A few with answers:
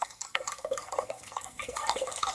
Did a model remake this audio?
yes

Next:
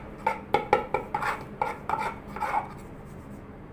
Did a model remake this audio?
no